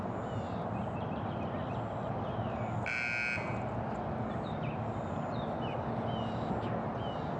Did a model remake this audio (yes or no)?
no